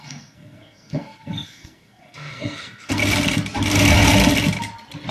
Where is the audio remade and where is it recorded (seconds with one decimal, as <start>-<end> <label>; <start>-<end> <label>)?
0.0-3.0 remade; 3.0-5.1 recorded